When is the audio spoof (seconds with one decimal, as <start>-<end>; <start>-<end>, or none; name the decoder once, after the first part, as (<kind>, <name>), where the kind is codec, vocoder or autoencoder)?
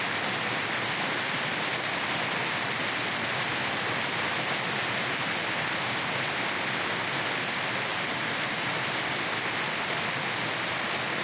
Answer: 7.9-8.8 (vocoder, BigVGAN v2)